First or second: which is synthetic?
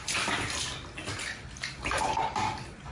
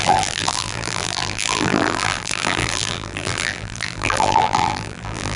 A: second